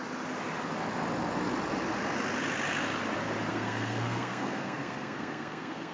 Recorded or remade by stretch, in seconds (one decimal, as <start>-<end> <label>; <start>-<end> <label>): 0.0-3.5 recorded; 3.5-5.9 remade